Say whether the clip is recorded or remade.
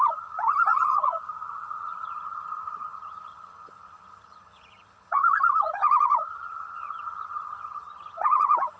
remade